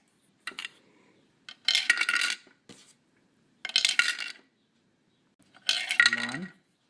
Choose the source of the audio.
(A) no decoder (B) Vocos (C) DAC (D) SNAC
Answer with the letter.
A